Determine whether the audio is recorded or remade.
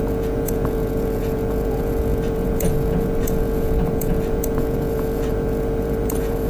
remade